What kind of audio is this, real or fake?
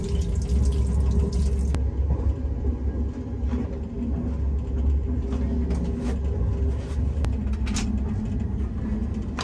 real